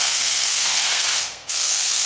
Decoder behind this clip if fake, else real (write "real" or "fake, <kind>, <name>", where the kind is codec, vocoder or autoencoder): fake, codec, SNAC